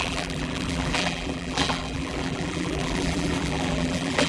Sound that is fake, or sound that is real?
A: fake